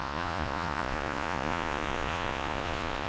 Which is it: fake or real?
fake